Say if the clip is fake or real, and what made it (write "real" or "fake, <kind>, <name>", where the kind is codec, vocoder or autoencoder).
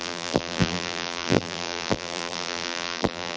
fake, vocoder, BigVGAN v2